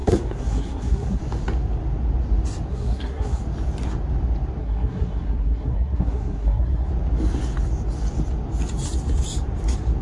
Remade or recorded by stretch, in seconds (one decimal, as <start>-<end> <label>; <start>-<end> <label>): 0.0-1.2 remade; 1.2-2.7 recorded; 2.7-3.4 remade; 3.4-4.6 recorded; 4.6-6.9 remade; 6.9-10.0 recorded